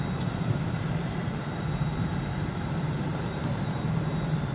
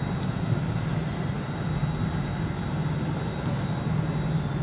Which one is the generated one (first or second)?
first